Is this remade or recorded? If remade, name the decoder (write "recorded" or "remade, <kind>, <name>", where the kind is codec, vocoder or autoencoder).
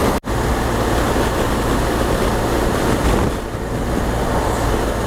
recorded